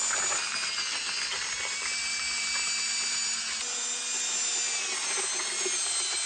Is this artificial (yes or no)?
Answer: no